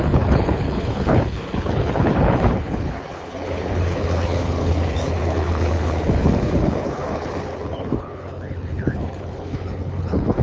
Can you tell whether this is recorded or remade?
remade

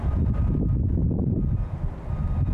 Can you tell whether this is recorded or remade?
recorded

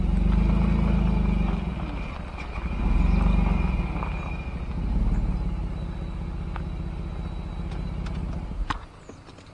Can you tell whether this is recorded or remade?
recorded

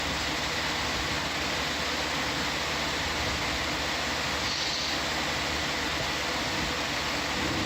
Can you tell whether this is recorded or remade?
recorded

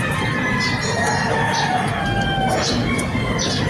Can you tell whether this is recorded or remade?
recorded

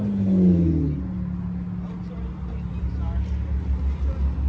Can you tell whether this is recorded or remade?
recorded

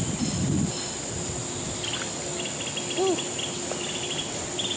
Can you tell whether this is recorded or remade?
recorded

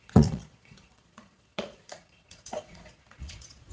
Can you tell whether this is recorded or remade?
remade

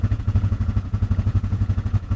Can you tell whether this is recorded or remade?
remade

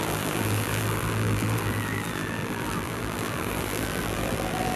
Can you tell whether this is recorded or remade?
remade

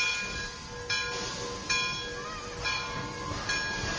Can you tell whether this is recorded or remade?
recorded